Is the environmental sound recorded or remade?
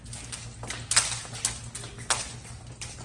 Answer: recorded